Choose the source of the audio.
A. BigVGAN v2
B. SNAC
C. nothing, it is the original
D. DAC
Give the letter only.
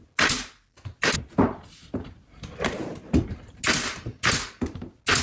C